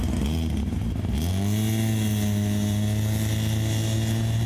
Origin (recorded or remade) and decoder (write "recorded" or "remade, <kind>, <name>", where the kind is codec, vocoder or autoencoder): recorded